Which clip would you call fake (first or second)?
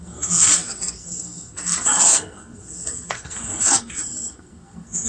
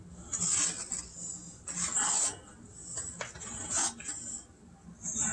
first